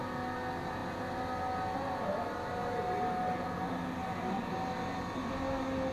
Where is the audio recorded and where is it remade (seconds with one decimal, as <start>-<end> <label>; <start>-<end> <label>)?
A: 0.0-5.9 recorded